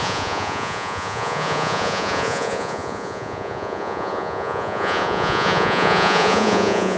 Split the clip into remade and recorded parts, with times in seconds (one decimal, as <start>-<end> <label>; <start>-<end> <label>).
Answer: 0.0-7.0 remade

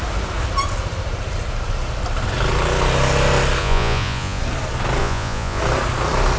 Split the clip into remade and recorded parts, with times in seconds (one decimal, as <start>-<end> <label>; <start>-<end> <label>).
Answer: 0.0-3.6 recorded; 3.6-4.4 remade; 4.4-5.0 recorded; 5.0-5.6 remade; 5.6-6.4 recorded

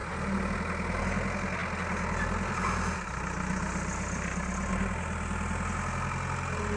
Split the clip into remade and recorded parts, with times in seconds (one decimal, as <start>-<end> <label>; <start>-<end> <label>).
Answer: 0.0-6.8 recorded

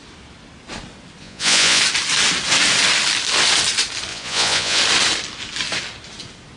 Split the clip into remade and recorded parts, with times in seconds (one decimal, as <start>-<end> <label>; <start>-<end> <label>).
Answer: 0.0-1.2 recorded; 1.2-1.8 remade; 1.8-4.1 recorded; 4.1-4.8 remade; 4.8-6.6 recorded

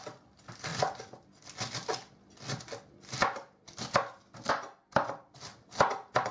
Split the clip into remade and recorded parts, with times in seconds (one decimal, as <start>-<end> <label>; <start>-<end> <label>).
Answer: 0.0-6.3 recorded

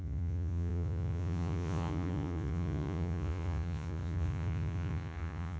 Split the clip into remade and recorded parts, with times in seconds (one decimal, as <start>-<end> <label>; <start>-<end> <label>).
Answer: 0.0-5.6 remade

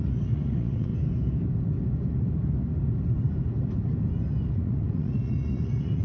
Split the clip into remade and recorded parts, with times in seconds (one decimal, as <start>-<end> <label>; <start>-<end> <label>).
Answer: 0.0-0.9 remade; 0.9-4.5 recorded; 4.5-6.0 remade